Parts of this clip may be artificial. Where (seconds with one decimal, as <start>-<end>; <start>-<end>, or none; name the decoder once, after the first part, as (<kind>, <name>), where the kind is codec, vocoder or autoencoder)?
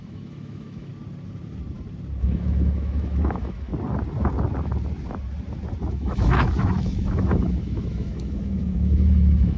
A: 0.0-0.9 (autoencoder, DAC-VAE); 2.2-3.7; 5.9-9.6